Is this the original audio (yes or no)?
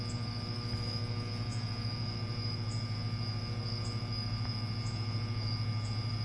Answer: yes